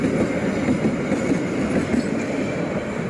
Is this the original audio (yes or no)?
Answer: yes